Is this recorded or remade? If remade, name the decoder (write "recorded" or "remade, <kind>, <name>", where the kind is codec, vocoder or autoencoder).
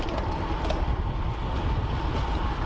recorded